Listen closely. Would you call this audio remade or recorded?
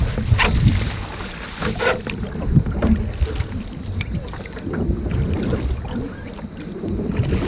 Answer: recorded